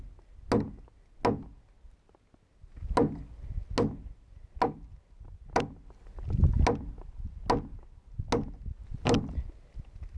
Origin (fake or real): real